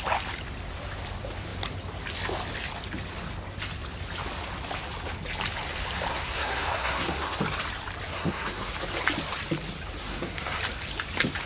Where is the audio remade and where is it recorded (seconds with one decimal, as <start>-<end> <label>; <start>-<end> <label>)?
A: 0.0-6.1 recorded; 6.1-7.4 remade; 7.4-8.1 recorded; 8.1-8.7 remade; 8.7-10.0 recorded; 10.0-10.6 remade; 10.6-11.5 recorded